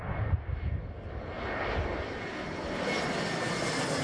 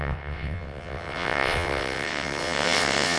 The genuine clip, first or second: first